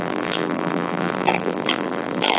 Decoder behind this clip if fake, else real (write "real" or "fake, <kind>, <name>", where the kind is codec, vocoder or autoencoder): fake, vocoder, BigVGAN v2